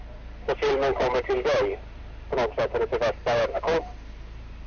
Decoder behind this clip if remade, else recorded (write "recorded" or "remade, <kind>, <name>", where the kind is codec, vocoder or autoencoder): recorded